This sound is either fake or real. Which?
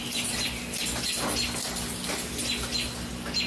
real